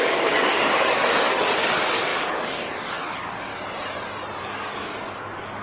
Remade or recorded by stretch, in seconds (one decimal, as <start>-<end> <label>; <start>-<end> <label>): 0.0-3.5 remade; 3.5-4.4 recorded; 4.4-5.6 remade